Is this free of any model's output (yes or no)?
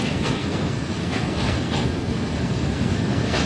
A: no